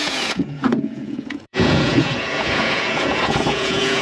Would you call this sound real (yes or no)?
no